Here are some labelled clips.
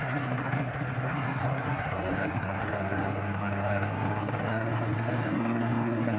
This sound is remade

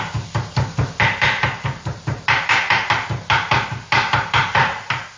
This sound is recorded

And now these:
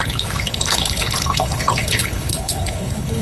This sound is remade